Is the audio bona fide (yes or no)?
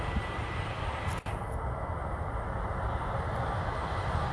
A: no